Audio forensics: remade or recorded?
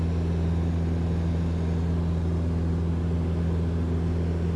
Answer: recorded